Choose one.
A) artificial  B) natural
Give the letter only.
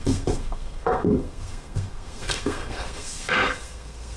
A